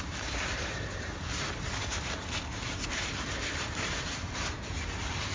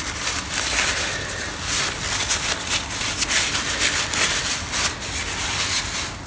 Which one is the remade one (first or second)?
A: first